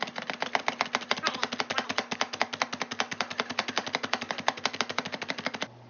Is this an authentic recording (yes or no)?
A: yes